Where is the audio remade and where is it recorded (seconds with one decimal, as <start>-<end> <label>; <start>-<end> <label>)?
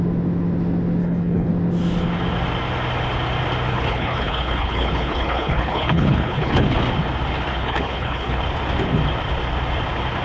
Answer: 0.0-1.0 recorded; 1.0-1.5 remade; 1.5-3.7 recorded; 3.7-6.8 remade; 6.8-7.5 recorded; 7.5-8.4 remade; 8.4-10.2 recorded